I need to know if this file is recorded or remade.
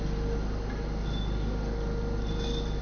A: recorded